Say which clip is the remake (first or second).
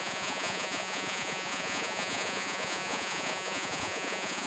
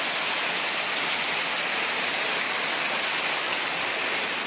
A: first